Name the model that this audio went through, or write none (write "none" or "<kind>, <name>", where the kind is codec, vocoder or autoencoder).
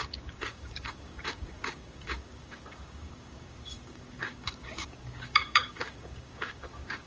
codec, DAC